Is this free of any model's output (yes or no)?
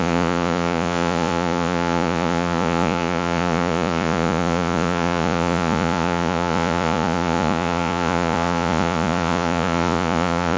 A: no